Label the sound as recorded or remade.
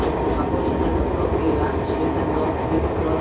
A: recorded